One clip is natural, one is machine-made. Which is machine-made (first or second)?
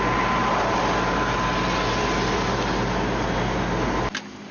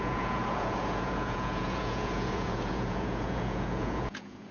second